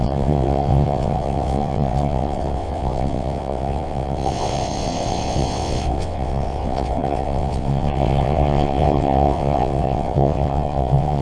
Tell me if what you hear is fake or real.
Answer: fake